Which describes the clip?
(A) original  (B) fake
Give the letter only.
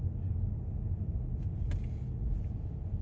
A